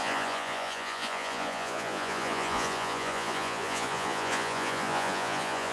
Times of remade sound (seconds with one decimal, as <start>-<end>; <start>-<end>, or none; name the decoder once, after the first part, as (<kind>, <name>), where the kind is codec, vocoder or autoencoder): 0.0-5.7 (vocoder, Vocos)